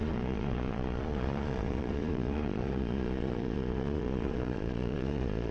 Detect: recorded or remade remade